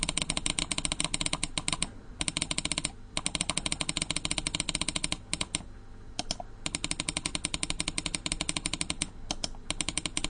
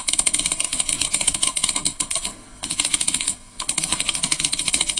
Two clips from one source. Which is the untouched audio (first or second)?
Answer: first